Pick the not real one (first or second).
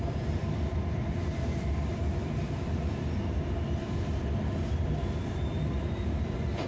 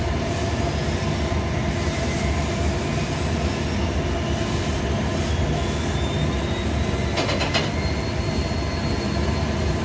first